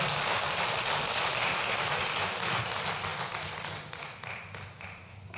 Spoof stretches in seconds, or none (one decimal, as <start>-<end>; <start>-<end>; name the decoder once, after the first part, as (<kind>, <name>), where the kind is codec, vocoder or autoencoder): none